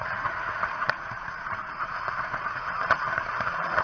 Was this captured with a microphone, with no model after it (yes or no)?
no